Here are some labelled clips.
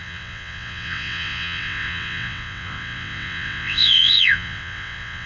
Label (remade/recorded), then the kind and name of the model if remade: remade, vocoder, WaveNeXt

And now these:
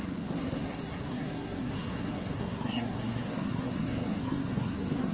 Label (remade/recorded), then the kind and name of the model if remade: remade, codec, SNAC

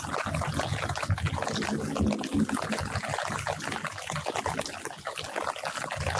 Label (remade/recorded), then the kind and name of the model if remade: recorded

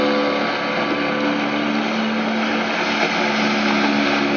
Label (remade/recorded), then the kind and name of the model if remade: recorded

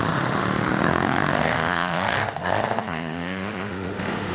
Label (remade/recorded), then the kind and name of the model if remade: remade, autoencoder, DAC-VAE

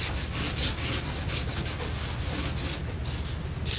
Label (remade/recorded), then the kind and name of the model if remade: recorded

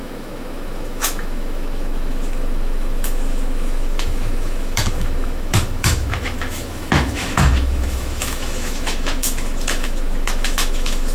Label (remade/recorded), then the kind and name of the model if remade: remade, autoencoder, DAC-VAE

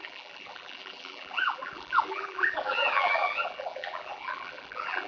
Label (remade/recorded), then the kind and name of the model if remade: remade, vocoder, BigVGAN v2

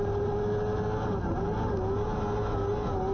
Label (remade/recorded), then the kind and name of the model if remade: recorded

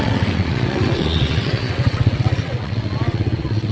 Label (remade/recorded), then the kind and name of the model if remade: remade, vocoder, WaveNeXt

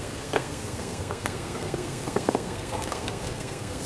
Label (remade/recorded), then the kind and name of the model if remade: remade, codec, SNAC